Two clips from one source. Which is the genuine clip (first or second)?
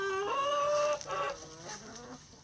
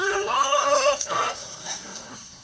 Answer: first